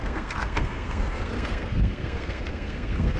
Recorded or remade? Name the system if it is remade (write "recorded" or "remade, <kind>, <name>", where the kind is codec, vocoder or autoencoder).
remade, codec, SNAC